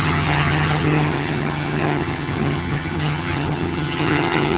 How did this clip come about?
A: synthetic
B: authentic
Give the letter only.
A